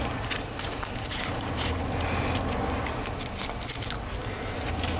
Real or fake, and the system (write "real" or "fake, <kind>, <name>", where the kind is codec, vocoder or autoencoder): real